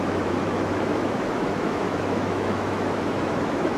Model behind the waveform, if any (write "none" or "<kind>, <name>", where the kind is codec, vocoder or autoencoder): autoencoder, DAC-VAE